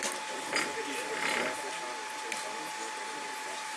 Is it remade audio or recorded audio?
recorded